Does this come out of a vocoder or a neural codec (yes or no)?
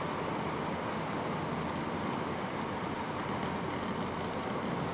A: no